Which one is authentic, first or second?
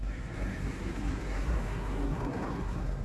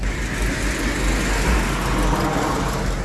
second